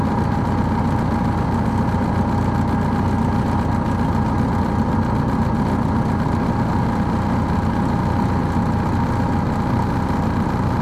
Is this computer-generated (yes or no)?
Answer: no